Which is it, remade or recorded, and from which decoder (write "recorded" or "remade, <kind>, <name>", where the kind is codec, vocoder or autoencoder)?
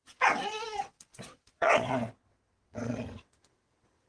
remade, vocoder, WaveNeXt